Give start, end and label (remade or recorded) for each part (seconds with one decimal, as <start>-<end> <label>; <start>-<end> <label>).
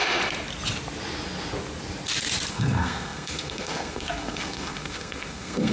0.0-2.5 recorded; 2.5-5.7 remade